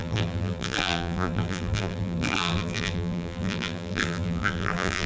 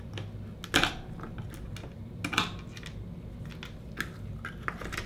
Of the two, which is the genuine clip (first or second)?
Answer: second